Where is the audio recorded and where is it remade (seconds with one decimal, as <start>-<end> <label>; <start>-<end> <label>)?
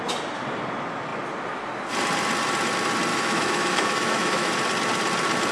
0.0-3.1 recorded; 3.1-4.5 remade; 4.5-5.5 recorded